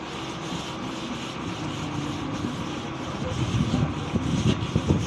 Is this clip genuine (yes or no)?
yes